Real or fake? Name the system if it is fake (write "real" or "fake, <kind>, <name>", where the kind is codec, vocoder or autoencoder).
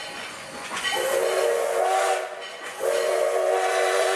fake, vocoder, Vocos